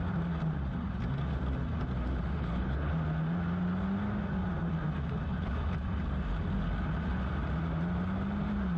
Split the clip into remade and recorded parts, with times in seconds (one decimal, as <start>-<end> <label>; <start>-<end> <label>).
0.0-2.4 recorded; 2.4-2.9 remade; 2.9-8.8 recorded